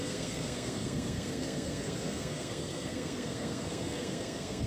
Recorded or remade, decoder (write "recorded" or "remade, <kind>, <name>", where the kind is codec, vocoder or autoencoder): remade, codec, SNAC